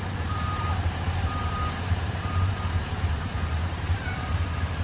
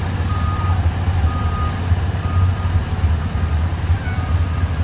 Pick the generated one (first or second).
first